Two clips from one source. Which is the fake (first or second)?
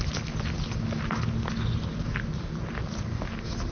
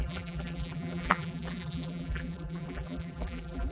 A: second